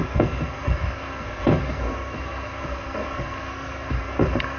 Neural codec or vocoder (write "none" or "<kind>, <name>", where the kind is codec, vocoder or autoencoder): codec, SNAC